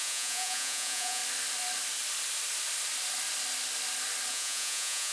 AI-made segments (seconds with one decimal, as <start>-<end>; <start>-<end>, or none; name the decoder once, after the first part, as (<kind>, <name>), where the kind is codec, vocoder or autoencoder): 0.0-1.2 (vocoder, Vocos); 4.3-5.1